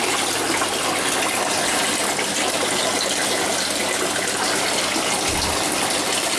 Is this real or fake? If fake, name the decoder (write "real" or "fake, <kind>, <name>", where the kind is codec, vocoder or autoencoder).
real